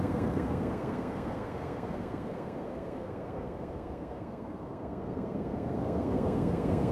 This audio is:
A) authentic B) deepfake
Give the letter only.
B